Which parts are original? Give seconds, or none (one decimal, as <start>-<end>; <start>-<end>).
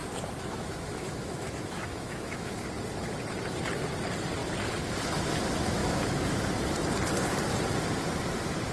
2.5-5.8; 6.4-8.7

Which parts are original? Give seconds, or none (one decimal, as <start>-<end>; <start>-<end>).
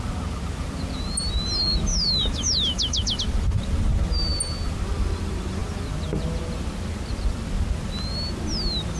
0.0-1.9; 3.2-9.0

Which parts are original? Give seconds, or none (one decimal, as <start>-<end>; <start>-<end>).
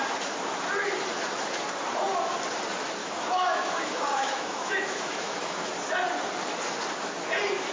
0.0-3.0; 5.7-7.7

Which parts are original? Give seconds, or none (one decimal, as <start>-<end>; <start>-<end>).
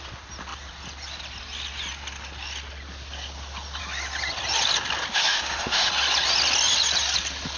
0.0-5.1; 5.9-7.6